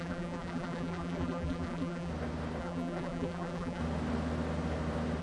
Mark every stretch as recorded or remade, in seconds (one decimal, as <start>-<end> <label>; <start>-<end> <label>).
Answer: 0.0-2.1 remade; 2.1-2.6 recorded; 2.6-3.8 remade; 3.8-5.2 recorded